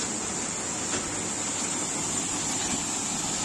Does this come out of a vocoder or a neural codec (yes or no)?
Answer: no